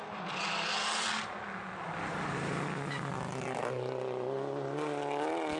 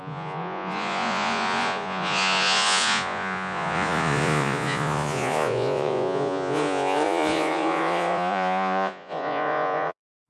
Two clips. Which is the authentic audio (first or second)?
first